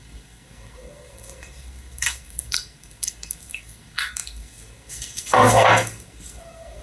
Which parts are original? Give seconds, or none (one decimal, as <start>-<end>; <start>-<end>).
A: none